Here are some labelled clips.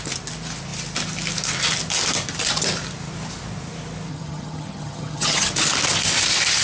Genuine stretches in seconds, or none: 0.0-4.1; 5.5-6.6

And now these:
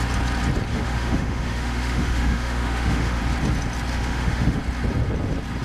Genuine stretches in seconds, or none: 0.0-0.7; 3.2-3.9; 4.6-5.6

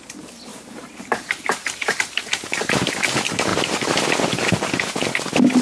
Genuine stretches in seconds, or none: 0.0-0.5; 2.9-5.6

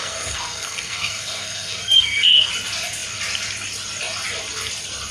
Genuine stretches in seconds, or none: 2.5-5.1

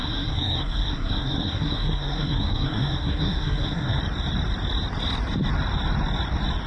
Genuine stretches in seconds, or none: 4.0-6.7

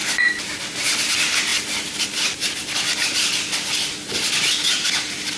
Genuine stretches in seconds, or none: 0.0-5.4